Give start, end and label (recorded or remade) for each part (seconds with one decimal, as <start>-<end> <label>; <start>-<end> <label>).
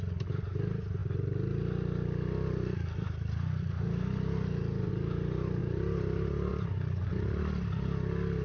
0.0-8.4 recorded